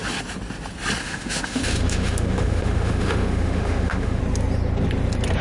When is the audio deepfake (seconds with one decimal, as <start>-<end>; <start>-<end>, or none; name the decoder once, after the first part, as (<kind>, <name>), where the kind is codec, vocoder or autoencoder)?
1.0-4.2 (autoencoder, DAC-VAE)